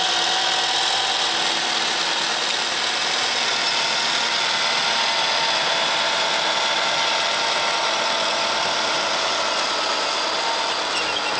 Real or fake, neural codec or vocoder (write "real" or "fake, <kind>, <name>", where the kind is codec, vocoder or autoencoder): real